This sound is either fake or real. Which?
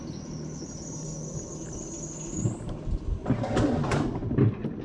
real